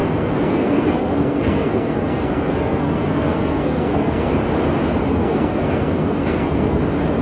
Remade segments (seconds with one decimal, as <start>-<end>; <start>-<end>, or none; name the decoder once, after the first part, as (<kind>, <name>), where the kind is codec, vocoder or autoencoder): 0.0-4.3 (codec, SNAC); 5.1-6.8